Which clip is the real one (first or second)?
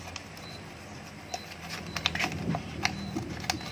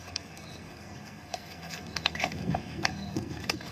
first